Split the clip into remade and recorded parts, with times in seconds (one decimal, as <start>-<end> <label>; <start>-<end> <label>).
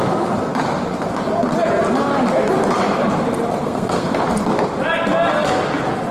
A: 0.0-3.6 recorded; 3.6-4.2 remade; 4.2-6.1 recorded